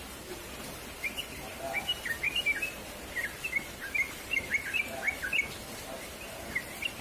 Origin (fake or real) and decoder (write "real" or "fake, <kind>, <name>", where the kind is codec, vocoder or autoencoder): real